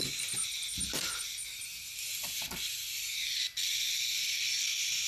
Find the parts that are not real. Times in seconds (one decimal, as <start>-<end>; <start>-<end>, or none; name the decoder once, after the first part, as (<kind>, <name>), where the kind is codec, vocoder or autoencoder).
none